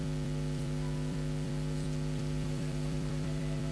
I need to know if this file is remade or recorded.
remade